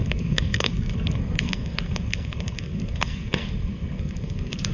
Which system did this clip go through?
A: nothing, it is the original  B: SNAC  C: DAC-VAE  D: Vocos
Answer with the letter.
B